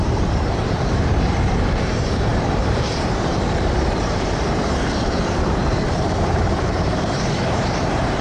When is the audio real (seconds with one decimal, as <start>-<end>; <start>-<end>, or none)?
none

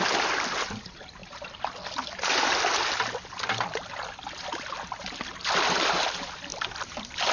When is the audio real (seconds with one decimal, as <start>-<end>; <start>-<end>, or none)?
0.0-6.5

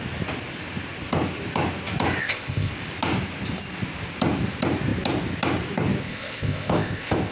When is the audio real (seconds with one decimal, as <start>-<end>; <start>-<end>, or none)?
0.0-2.2; 2.7-6.0